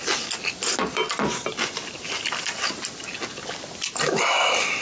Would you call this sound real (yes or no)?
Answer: yes